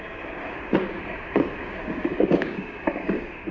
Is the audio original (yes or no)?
no